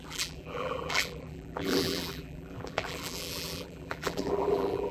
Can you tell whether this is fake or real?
fake